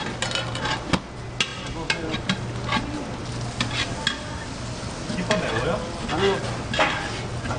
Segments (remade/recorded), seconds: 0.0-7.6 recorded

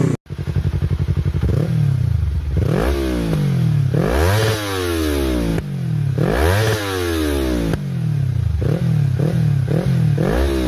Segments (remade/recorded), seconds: 0.0-10.7 recorded

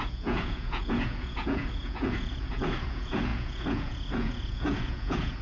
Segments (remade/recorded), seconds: 0.0-5.4 remade

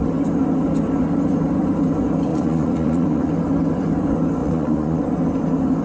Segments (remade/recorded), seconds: 0.0-2.3 recorded; 2.3-3.3 remade; 3.3-4.4 recorded; 4.4-5.0 remade; 5.0-5.8 recorded